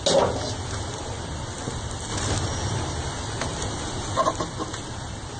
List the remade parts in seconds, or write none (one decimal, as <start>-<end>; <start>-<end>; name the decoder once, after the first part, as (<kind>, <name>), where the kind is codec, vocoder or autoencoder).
none